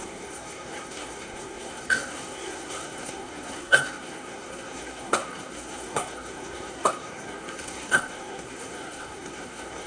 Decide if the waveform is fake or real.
fake